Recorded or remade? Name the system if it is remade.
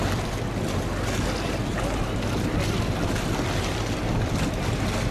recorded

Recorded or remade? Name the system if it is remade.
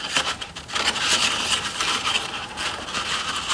recorded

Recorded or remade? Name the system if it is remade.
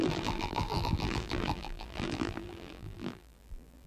remade, vocoder, BigVGAN v2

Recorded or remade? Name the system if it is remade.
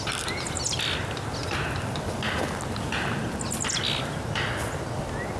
recorded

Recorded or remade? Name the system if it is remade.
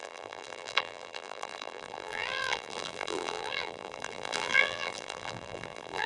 remade, vocoder, BigVGAN v2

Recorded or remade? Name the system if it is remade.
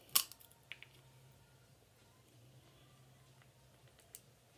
recorded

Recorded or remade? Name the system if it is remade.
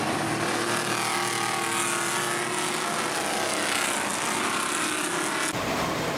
recorded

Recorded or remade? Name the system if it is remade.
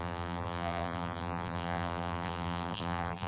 remade, vocoder, BigVGAN v2